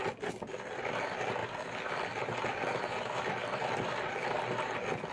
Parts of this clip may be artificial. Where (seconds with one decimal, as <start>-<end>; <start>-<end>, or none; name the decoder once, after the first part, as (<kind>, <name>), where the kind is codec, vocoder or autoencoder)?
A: none